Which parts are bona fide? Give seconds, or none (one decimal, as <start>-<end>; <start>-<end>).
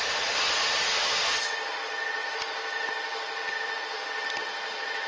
0.0-5.1